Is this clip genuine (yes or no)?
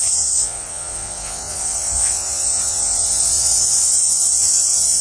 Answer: no